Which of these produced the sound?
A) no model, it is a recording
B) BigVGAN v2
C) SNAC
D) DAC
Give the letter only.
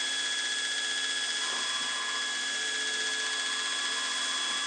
A